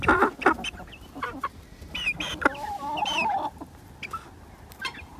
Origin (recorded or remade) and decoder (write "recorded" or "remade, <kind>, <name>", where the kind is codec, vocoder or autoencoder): recorded